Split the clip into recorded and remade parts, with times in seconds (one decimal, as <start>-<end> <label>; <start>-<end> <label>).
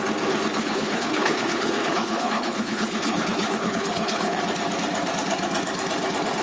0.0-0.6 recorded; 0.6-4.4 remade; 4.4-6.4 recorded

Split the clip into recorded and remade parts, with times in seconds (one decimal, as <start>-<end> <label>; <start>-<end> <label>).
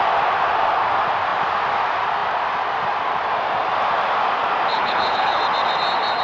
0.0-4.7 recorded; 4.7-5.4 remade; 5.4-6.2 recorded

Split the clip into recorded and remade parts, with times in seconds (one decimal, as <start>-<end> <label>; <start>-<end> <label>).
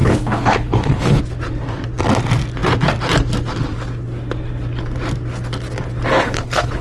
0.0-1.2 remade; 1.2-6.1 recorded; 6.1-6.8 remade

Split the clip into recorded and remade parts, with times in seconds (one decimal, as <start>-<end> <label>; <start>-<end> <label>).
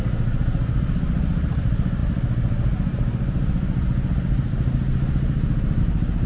0.0-6.3 recorded